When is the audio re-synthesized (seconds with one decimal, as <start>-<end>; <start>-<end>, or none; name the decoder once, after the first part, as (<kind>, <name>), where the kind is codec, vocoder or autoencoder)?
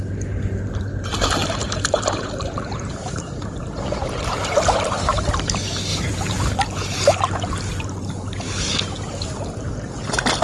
1.4-5.3 (vocoder, BigVGAN v2); 5.9-6.6